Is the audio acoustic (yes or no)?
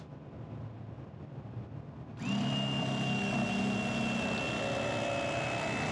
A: yes